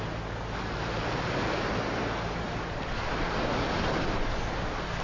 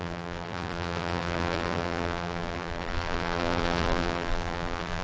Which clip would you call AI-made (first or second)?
second